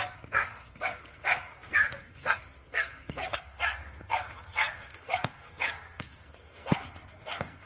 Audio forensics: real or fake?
fake